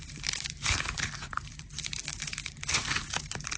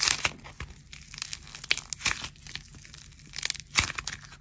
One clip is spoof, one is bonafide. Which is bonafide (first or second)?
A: second